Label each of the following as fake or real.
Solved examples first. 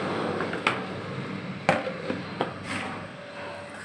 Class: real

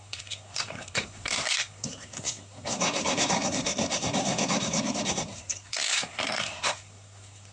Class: fake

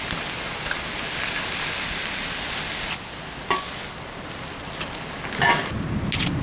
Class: real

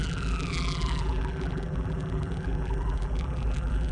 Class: fake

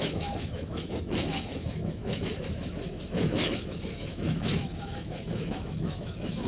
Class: fake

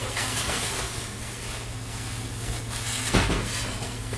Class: fake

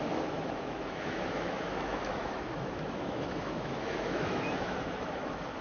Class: fake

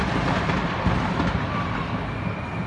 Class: real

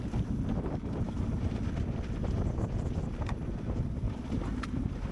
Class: real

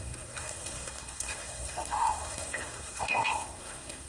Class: fake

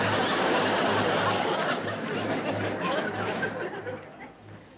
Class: real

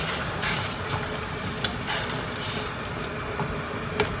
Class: real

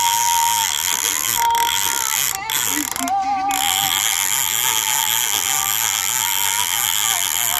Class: real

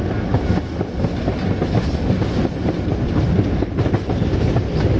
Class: real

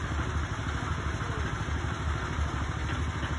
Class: real